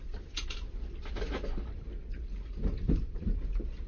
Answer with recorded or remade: recorded